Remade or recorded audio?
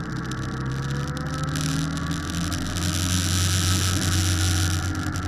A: recorded